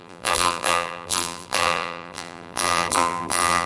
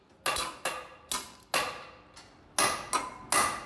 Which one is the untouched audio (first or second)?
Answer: second